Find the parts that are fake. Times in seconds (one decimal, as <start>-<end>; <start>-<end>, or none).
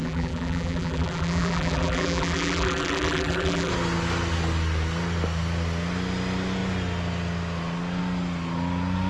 0.0-3.7